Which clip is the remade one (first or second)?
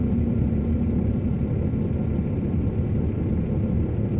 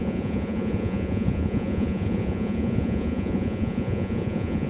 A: second